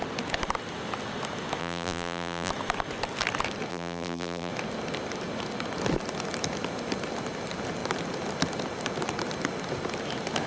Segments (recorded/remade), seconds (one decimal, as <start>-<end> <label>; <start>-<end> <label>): 0.0-1.6 recorded; 1.6-2.5 remade; 2.5-3.7 recorded; 3.7-4.5 remade; 4.5-10.5 recorded